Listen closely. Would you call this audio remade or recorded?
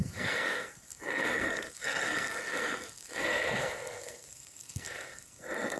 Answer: remade